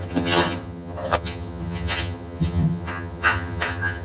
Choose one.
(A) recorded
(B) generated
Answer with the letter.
B